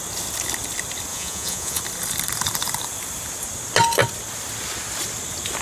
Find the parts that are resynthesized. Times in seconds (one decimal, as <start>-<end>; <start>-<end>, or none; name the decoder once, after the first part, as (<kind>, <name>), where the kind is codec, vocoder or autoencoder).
1.1-1.8 (vocoder, Vocos)